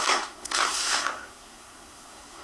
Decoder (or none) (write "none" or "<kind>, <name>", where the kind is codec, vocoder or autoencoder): codec, SNAC